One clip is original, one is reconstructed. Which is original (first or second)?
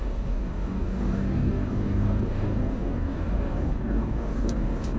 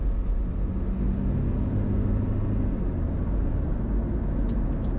second